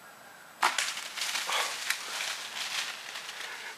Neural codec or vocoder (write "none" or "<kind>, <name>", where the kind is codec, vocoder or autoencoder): none